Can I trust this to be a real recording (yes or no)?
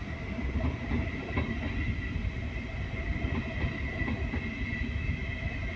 yes